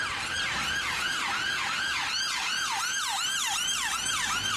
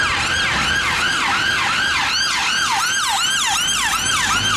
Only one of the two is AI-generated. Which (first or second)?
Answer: first